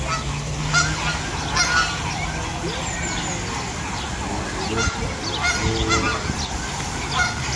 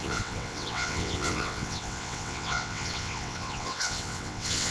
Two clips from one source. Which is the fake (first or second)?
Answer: second